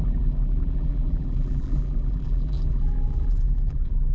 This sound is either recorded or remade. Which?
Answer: remade